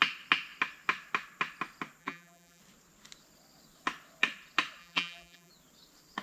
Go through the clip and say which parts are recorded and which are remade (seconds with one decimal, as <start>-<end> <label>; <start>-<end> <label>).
0.0-2.0 recorded; 2.0-2.6 remade; 2.6-4.8 recorded; 4.8-5.5 remade; 5.5-6.2 recorded